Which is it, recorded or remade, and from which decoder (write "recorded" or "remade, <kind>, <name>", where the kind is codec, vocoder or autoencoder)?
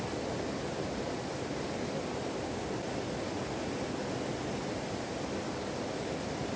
recorded